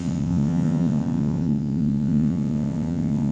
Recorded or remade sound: remade